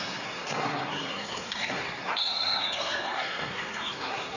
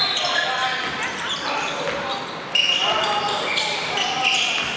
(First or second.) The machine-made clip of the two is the first